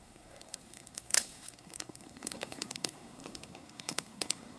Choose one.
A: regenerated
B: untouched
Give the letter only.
A